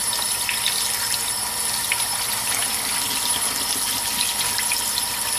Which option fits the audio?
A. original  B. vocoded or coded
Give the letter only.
A